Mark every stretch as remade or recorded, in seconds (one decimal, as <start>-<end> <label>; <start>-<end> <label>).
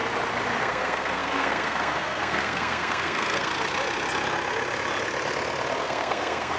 0.0-0.6 recorded; 0.6-3.5 remade; 3.5-5.8 recorded; 5.8-6.6 remade